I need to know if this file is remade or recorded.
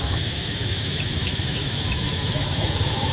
remade